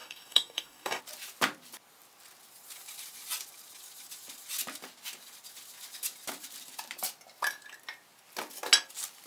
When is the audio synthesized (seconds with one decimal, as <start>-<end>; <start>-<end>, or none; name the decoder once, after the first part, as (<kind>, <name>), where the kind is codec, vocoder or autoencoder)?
0.0-1.0 (codec, DAC)